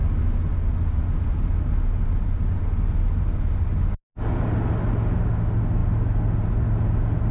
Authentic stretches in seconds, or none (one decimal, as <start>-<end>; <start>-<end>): 0.0-7.3